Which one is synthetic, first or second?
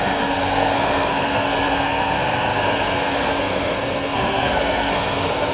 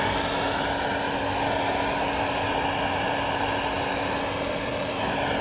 first